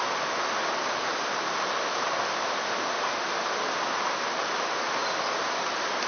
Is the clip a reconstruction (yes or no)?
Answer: no